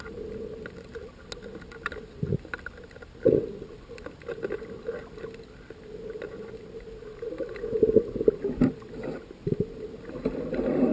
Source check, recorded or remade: recorded